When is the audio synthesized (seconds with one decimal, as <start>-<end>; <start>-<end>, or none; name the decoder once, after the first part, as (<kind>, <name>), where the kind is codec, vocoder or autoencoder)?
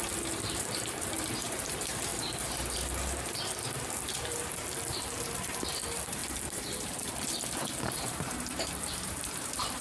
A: 0.0-9.8 (vocoder, BigVGAN v2)